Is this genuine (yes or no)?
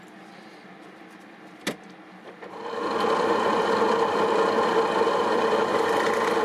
yes